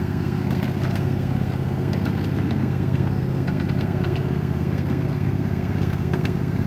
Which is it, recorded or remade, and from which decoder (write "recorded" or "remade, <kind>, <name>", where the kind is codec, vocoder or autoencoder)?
remade, codec, SNAC